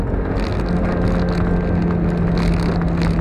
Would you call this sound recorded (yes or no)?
yes